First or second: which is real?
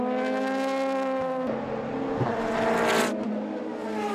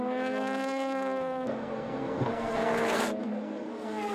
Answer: first